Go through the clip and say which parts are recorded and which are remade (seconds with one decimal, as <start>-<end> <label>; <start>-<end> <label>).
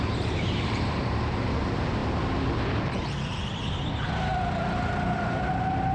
0.0-2.0 remade; 2.0-5.5 recorded; 5.5-5.9 remade